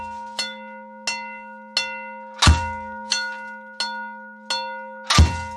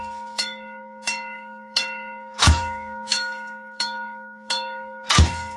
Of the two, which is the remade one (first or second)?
second